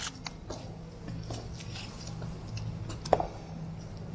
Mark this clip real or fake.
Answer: real